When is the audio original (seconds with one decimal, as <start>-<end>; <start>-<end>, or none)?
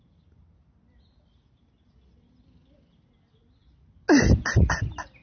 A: 0.0-5.2